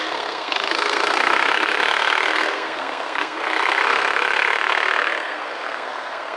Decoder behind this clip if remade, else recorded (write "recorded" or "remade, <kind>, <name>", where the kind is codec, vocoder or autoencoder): remade, codec, SNAC